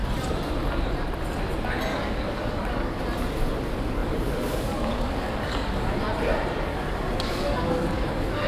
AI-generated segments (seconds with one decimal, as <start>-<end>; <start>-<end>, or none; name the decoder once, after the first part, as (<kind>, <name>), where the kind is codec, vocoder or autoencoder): 1.9-3.0 (codec, DAC); 4.0-6.0; 6.7-8.5